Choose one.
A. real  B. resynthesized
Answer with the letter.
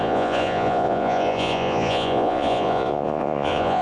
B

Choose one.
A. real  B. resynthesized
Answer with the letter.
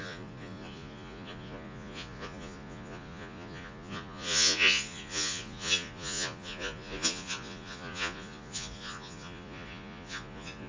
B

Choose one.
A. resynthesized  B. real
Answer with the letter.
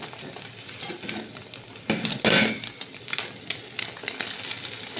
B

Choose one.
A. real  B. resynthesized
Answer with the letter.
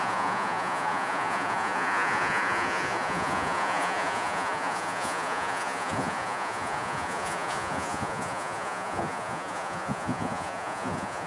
B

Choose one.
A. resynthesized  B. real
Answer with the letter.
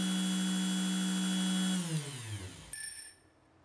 B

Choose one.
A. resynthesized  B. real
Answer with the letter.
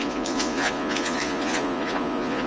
A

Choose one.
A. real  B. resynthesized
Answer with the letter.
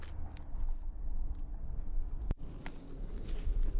A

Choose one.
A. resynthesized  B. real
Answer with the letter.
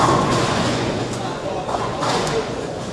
A